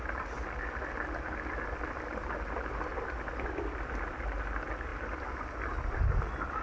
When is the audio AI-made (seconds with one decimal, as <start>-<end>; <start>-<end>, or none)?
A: none